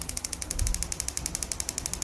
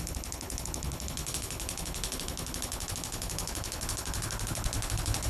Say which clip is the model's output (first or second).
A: second